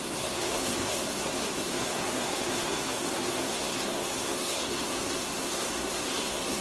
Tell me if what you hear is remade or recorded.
remade